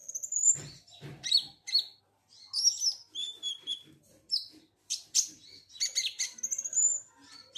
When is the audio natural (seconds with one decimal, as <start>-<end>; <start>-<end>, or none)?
2.0-3.2; 6.4-7.6